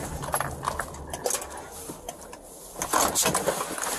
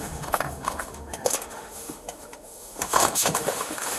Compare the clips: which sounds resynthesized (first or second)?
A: second